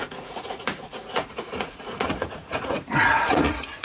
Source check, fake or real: fake